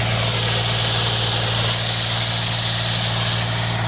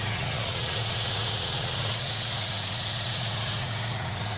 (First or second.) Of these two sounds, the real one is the first